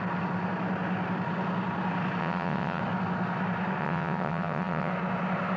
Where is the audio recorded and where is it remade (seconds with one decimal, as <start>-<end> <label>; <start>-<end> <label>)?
0.0-2.2 recorded; 2.2-2.8 remade; 2.8-3.8 recorded; 3.8-4.9 remade; 4.9-5.6 recorded